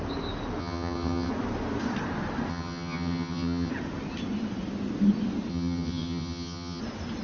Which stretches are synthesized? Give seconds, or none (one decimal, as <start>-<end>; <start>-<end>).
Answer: 0.6-1.3; 2.5-3.7; 5.5-6.8